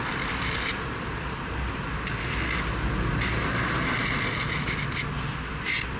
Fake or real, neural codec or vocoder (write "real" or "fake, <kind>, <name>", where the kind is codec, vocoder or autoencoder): real